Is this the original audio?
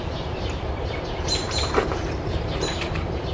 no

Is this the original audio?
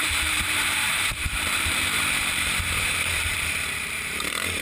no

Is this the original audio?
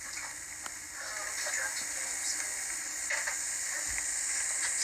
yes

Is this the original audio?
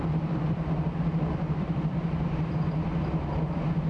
no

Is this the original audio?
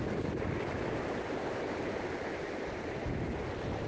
yes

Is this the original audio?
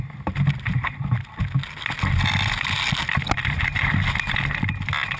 yes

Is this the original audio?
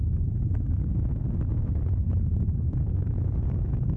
no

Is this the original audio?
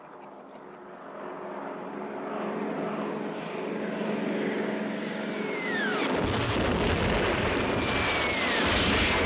yes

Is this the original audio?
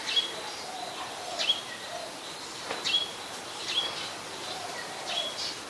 yes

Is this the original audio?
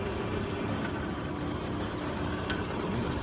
yes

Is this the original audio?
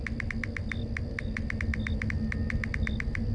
yes